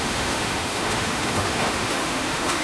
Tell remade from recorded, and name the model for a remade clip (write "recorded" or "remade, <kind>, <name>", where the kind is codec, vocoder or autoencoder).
remade, autoencoder, DAC-VAE